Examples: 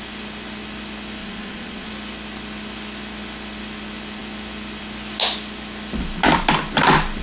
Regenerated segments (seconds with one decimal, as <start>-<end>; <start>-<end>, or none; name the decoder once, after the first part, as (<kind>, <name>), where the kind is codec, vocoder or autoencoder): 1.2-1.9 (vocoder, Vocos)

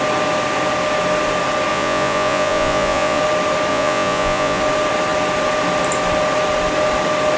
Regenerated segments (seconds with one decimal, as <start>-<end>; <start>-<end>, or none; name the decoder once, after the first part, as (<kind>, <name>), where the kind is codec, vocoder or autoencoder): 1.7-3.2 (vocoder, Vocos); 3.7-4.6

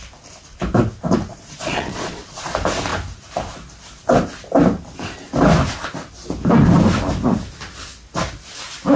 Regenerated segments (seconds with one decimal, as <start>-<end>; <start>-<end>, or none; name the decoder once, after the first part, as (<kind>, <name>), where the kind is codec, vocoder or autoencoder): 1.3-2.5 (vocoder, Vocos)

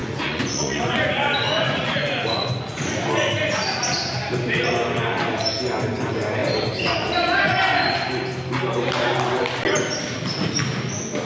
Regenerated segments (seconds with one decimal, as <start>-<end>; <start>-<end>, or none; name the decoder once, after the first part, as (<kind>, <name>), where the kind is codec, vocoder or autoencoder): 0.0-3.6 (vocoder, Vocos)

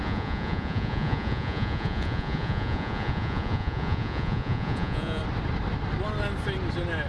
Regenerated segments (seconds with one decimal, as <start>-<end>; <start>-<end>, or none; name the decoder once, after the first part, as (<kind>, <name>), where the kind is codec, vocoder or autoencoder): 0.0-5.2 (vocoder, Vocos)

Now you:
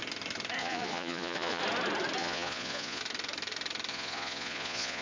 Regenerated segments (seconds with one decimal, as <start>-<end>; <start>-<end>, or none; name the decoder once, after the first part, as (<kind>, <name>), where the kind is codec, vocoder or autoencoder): 0.6-1.6 (vocoder, Vocos); 2.2-3.0; 3.9-5.0

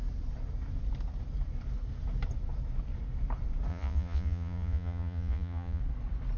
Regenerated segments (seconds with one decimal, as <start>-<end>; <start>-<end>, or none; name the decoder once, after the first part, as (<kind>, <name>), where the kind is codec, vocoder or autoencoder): 3.7-5.8 (vocoder, Vocos)

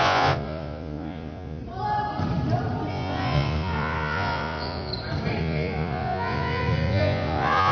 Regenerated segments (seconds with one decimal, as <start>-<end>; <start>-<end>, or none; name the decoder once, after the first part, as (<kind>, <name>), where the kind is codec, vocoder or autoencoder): 0.0-1.6 (vocoder, Vocos); 2.9-4.9; 5.4-7.7